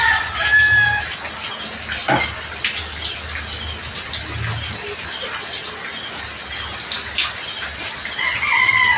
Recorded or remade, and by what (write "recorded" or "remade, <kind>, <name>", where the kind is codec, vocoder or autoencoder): recorded